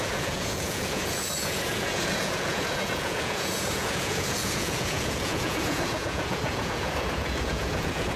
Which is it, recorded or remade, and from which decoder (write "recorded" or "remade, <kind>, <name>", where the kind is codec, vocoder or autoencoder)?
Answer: remade, vocoder, Vocos